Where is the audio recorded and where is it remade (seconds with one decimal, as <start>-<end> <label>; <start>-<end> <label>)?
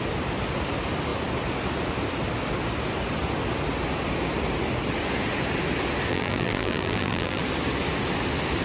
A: 0.0-6.1 recorded; 6.1-7.4 remade; 7.4-8.6 recorded